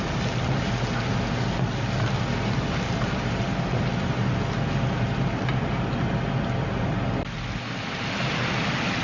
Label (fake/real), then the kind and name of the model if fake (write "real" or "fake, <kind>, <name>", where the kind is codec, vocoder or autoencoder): real